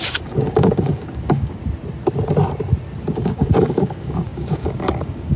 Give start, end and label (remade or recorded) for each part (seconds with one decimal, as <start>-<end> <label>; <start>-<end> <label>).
0.0-1.6 remade; 1.6-3.1 recorded; 3.1-5.4 remade